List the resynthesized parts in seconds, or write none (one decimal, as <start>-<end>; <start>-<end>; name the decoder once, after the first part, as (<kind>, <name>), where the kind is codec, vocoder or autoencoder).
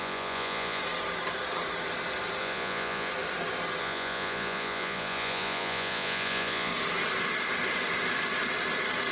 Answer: 0.0-0.8 (vocoder, Vocos); 2.4-3.1; 3.8-6.7